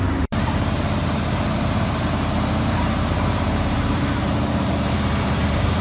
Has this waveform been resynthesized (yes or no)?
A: yes